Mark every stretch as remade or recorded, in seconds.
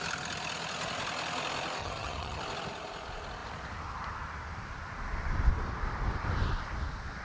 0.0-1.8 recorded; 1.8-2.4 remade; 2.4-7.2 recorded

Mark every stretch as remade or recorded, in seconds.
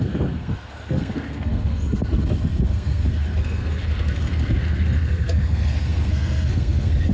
0.0-7.1 remade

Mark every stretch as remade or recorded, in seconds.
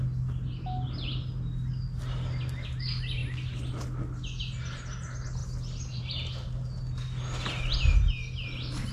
0.0-8.9 recorded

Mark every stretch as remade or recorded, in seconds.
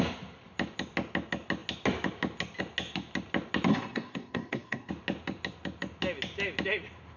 0.0-3.7 recorded; 3.7-4.9 remade; 4.9-7.2 recorded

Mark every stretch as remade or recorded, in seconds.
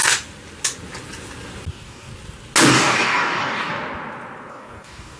0.0-1.7 recorded; 1.7-2.1 remade; 2.1-2.7 recorded; 2.7-3.7 remade; 3.7-4.5 recorded; 4.5-5.2 remade